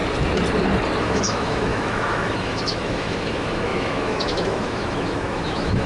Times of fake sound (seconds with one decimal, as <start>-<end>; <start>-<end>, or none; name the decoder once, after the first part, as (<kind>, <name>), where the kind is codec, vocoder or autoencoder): 1.0-5.9 (autoencoder, DAC-VAE)